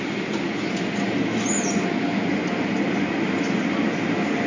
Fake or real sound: real